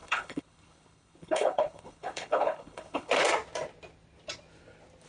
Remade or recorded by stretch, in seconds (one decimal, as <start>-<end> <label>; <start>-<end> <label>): 0.0-3.1 remade; 3.1-5.1 recorded